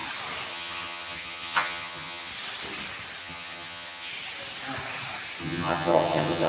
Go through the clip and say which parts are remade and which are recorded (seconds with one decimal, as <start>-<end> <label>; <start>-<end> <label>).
0.0-0.5 recorded; 0.5-2.3 remade; 2.3-3.2 recorded; 3.2-4.1 remade; 4.1-5.4 recorded; 5.4-6.5 remade